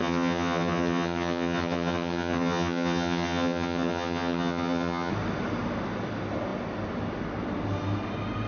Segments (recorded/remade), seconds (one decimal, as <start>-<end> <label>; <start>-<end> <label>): 0.0-5.1 remade; 5.1-8.5 recorded